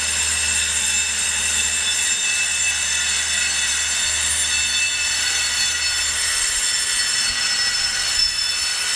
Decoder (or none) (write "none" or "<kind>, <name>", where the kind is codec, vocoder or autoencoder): none